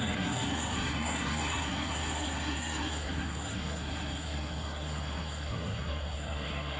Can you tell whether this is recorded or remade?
remade